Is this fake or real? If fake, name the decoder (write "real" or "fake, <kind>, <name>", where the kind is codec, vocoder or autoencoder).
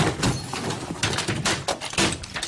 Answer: real